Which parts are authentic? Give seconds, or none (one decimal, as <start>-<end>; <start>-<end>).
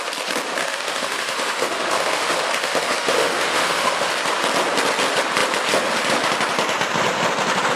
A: 0.0-0.6; 4.1-7.8